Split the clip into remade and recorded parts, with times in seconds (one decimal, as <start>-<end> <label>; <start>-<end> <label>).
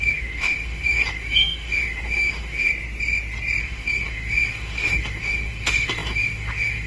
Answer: 0.0-2.7 remade; 2.7-3.6 recorded; 3.6-6.9 remade